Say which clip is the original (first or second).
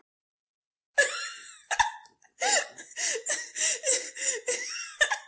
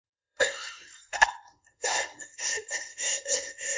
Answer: first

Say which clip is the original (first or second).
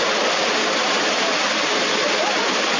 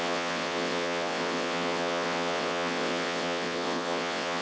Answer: first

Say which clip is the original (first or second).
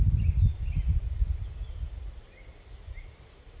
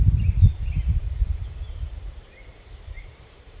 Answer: first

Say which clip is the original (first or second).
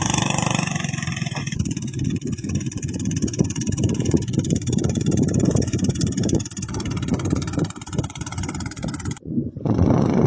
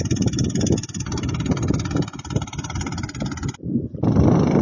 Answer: second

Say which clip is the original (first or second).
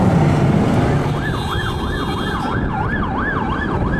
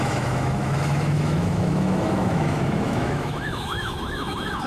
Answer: first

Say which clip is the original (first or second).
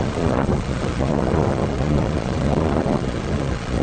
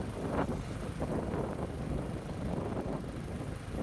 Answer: second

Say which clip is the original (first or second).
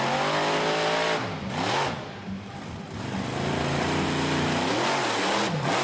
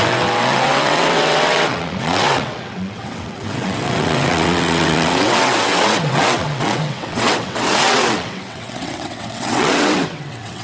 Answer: first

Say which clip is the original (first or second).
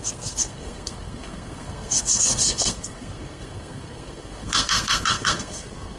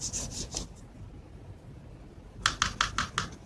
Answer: second